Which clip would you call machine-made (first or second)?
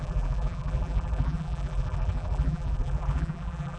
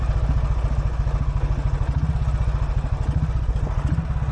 first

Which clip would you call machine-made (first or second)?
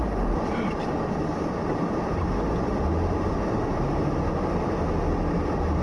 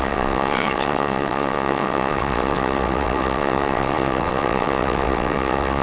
second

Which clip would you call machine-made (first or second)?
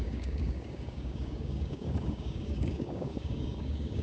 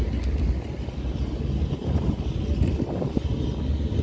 first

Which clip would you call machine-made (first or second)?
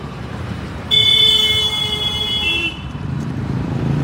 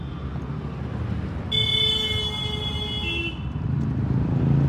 first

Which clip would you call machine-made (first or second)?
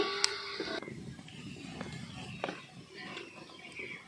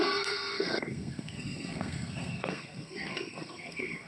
second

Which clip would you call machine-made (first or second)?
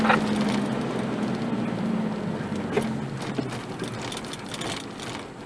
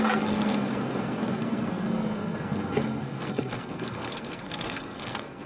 second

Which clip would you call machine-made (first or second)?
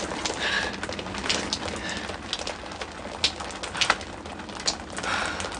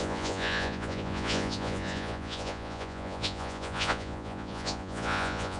second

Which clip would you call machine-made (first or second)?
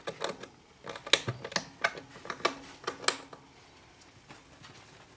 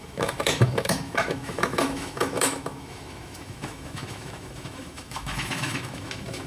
second